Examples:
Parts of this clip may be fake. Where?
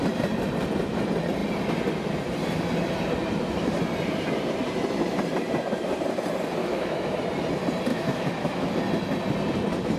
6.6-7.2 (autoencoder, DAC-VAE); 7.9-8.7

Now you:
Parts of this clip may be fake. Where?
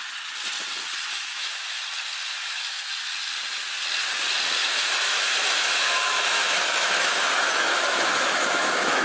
1.1-1.8 (autoencoder, DAC-VAE); 2.2-2.9; 4.6-9.0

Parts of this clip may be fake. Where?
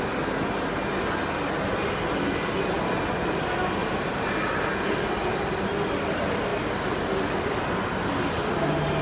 none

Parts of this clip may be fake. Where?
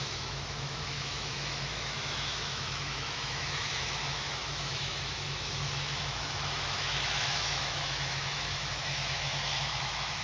0.0-10.2 (autoencoder, DAC-VAE)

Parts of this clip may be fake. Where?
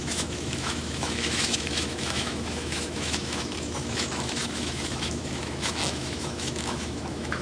0.0-7.4 (autoencoder, DAC-VAE)